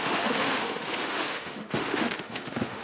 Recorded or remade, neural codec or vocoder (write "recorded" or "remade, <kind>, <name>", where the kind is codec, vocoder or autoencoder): remade, autoencoder, DAC-VAE